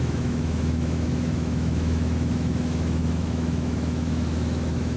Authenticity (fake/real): fake